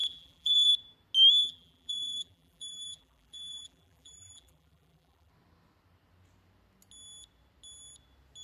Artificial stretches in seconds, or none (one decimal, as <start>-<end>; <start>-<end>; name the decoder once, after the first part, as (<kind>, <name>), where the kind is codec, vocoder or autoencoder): 0.0-0.7 (vocoder, BigVGAN v2); 1.4-5.3